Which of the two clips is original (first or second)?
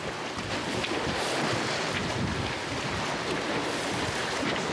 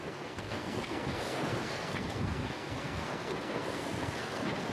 first